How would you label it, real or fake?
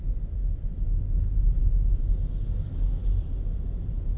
real